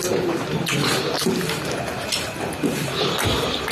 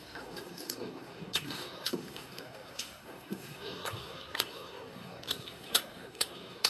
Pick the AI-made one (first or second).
second